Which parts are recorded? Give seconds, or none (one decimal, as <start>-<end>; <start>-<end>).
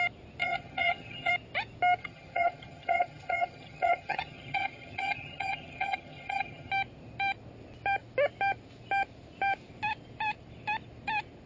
0.0-0.4; 1.3-2.0; 6.7-11.5